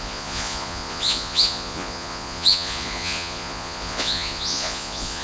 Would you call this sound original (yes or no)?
no